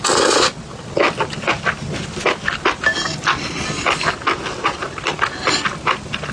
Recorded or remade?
recorded